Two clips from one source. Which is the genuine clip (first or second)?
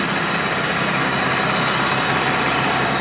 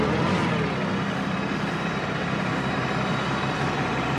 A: first